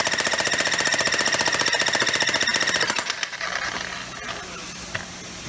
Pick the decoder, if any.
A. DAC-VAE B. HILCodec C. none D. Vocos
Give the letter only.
C